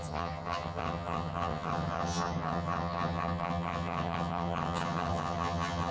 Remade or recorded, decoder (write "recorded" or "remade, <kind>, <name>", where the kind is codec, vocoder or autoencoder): remade, vocoder, HiFi-GAN